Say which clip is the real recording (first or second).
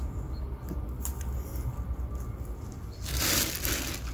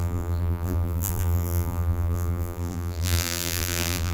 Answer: first